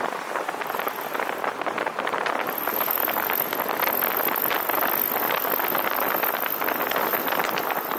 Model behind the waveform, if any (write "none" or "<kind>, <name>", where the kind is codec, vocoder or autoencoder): none